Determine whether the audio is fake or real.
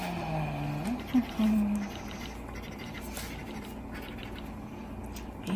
real